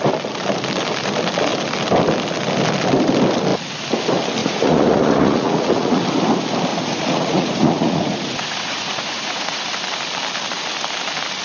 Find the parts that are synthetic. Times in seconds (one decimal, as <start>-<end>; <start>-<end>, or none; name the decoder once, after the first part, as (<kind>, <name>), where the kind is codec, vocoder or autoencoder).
4.4-6.0 (vocoder, Vocos); 6.7-9.6